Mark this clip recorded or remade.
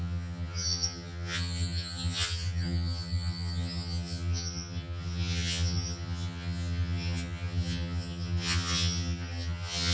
remade